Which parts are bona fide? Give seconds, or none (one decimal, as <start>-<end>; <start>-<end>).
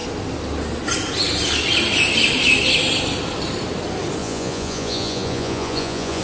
0.0-4.2